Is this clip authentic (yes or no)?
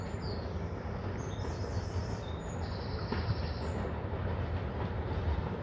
yes